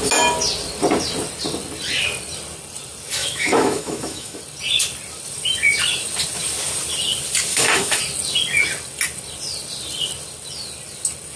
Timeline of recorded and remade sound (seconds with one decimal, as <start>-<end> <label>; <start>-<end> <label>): 0.0-3.2 recorded; 3.2-4.4 remade; 4.4-7.5 recorded; 7.5-8.0 remade; 8.0-11.4 recorded